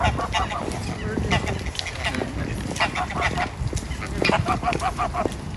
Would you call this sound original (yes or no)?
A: yes